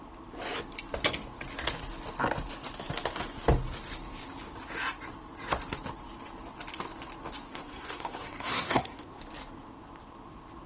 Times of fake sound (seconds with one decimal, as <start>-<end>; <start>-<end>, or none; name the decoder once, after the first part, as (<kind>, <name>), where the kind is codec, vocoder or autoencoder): 7.5-9.2 (codec, SNAC)